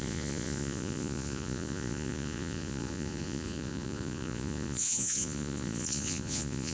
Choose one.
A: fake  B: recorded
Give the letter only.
A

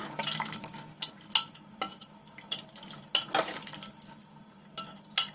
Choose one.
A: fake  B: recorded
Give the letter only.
B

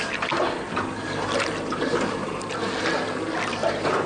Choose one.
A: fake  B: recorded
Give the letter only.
B